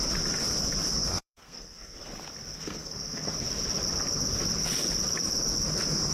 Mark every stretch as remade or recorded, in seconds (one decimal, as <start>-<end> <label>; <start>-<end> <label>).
0.0-1.1 recorded; 1.1-2.1 remade; 2.1-2.5 recorded; 2.5-3.3 remade; 3.3-6.1 recorded